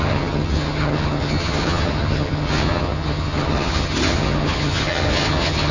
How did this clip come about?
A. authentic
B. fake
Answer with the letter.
B